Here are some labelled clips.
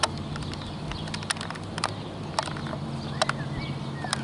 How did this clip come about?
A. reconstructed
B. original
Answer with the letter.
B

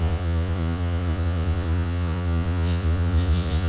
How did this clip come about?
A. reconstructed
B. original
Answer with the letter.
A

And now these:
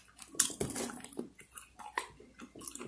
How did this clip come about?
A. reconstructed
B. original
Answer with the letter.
B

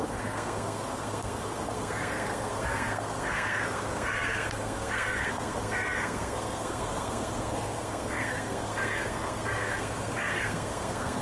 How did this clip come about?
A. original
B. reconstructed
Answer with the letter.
B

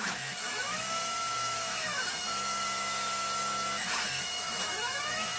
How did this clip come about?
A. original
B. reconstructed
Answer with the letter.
B